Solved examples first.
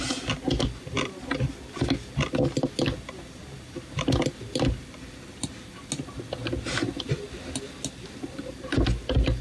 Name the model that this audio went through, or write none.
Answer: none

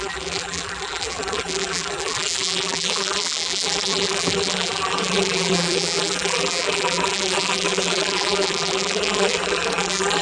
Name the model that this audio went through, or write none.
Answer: vocoder, BigVGAN v2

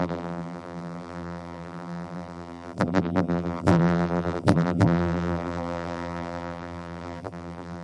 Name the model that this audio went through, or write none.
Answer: vocoder, BigVGAN v2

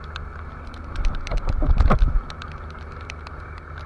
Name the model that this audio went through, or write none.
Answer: none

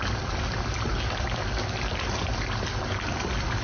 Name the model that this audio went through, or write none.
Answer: vocoder, BigVGAN v2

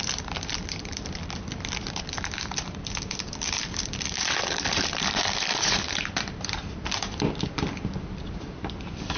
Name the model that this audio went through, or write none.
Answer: vocoder, BigVGAN v2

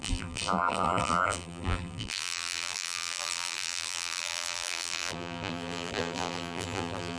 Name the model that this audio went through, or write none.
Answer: vocoder, BigVGAN v2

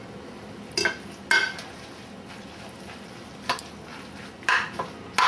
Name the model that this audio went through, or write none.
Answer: none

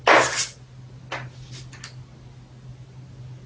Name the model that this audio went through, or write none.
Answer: none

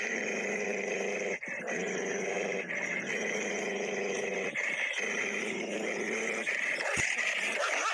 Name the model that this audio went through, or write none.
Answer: vocoder, BigVGAN v2